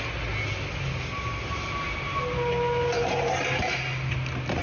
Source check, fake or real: real